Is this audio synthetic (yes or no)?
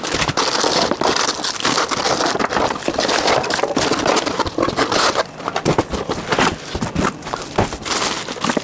no